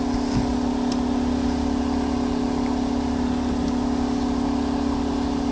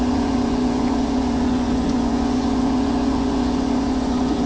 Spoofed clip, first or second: second